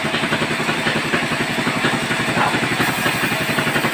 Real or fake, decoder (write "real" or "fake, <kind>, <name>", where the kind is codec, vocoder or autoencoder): fake, vocoder, BigVGAN v2